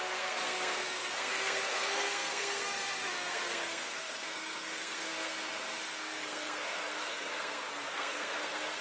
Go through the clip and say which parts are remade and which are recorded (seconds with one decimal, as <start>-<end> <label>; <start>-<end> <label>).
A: 0.0-8.8 remade